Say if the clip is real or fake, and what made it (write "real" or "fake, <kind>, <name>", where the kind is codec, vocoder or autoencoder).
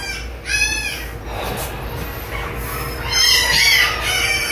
real